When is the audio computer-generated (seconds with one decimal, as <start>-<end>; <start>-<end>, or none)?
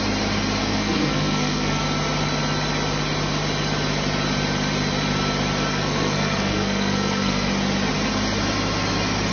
0.6-1.8; 5.7-7.5